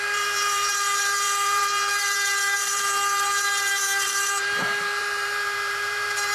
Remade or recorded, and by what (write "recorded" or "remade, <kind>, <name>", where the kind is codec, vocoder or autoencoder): remade, vocoder, BigVGAN v2